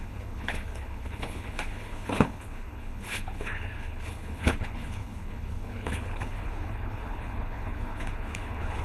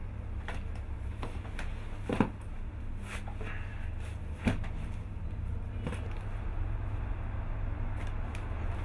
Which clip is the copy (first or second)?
first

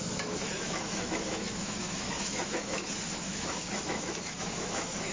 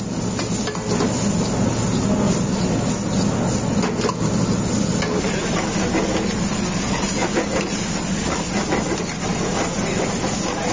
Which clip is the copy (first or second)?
first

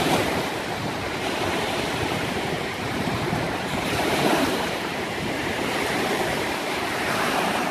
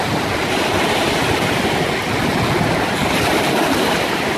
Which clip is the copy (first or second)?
first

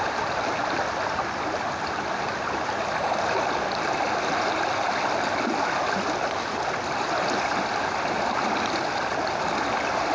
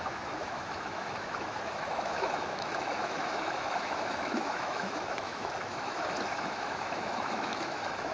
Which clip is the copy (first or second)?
second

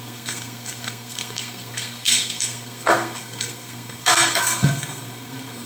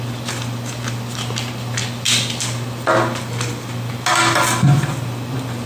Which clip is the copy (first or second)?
first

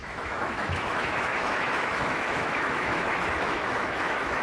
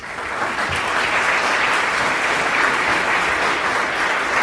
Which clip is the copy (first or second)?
first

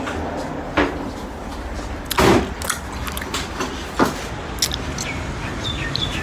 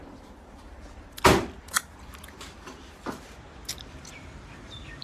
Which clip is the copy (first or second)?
second